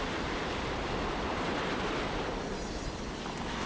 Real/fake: real